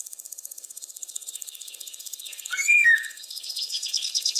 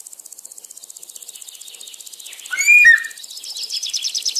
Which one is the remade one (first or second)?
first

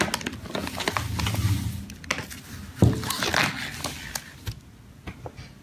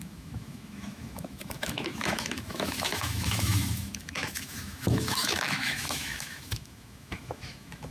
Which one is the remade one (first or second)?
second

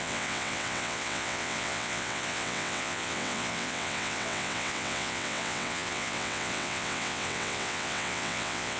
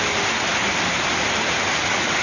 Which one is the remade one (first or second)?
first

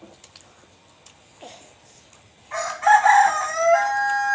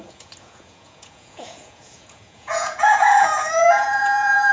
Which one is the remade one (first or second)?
second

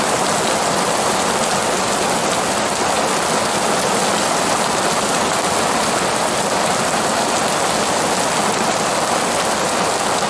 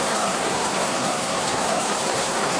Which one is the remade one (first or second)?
second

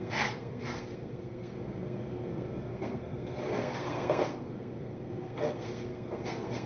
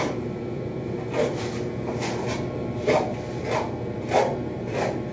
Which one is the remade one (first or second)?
first